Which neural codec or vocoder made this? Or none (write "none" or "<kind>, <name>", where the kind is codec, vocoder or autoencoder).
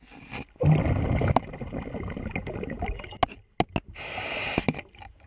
none